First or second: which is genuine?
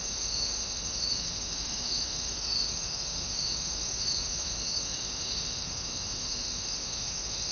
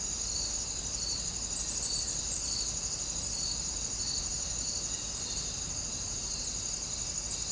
second